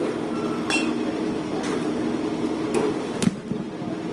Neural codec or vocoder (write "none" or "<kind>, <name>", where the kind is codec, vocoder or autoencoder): none